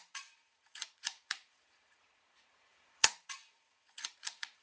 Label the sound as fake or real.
fake